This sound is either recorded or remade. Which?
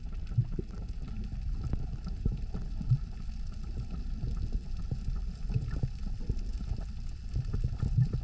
recorded